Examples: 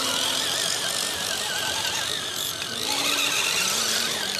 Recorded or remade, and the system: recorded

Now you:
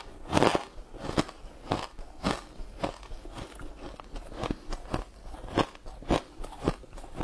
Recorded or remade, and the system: recorded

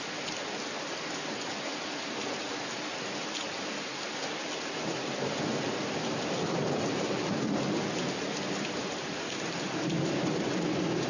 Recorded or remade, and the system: recorded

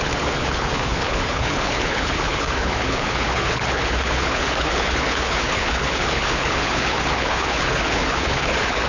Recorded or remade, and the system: remade, codec, HILCodec